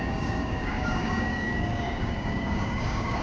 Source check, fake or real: fake